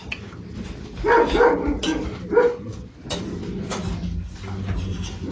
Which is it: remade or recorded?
recorded